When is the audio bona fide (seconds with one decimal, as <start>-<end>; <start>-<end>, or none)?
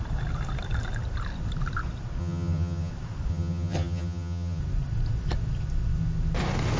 0.0-2.2; 2.9-3.3; 4.6-6.8